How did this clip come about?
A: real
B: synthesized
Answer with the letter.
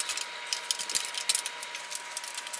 A